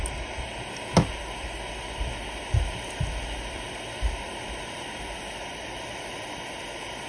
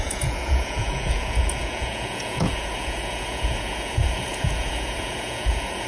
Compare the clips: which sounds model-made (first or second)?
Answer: second